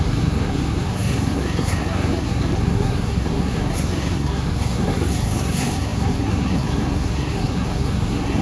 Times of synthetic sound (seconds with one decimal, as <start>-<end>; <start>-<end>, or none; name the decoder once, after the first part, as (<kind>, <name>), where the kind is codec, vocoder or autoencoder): 0.0-8.4 (codec, SNAC)